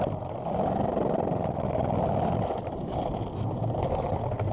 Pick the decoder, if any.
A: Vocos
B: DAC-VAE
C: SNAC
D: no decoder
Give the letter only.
D